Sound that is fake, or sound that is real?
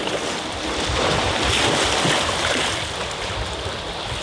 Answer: real